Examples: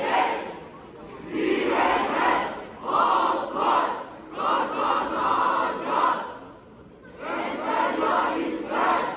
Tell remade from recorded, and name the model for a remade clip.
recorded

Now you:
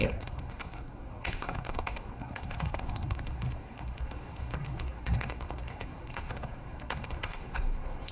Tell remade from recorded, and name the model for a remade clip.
remade, codec, SNAC